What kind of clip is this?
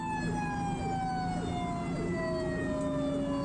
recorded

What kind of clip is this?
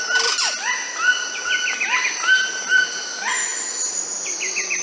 recorded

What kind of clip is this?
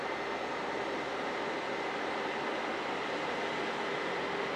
recorded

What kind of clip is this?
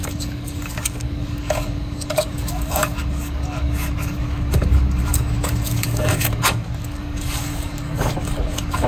remade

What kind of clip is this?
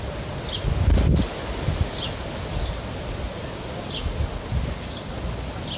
recorded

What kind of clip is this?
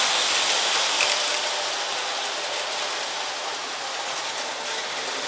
recorded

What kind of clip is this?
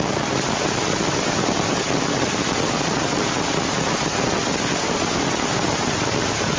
recorded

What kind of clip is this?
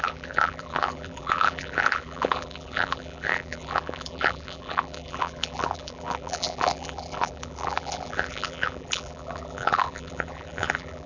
remade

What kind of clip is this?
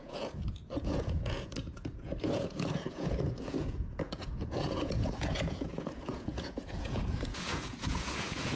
remade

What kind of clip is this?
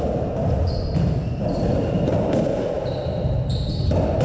recorded